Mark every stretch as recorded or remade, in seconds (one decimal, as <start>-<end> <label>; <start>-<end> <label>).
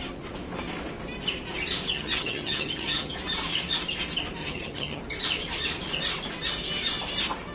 0.0-1.9 recorded; 1.9-3.1 remade; 3.1-4.4 recorded; 4.4-5.0 remade; 5.0-7.5 recorded